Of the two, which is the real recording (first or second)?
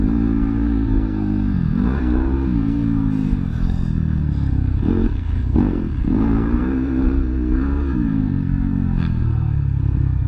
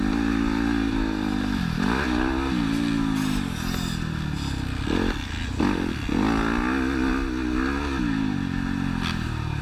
second